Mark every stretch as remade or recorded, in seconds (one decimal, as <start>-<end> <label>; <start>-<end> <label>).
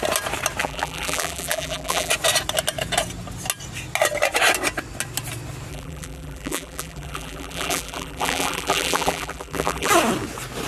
0.0-0.6 recorded; 0.6-2.1 remade; 2.1-5.7 recorded; 5.7-9.9 remade; 9.9-10.7 recorded